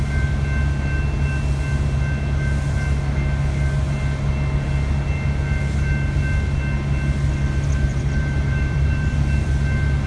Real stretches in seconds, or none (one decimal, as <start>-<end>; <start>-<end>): 0.0-7.9; 9.5-10.1